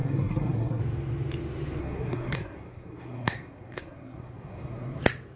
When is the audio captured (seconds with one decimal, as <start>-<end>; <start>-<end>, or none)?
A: 0.8-1.8; 5.0-5.4